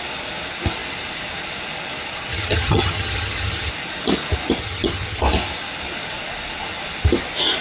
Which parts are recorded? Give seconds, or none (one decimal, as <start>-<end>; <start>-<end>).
0.0-2.3; 3.7-4.6; 5.2-7.6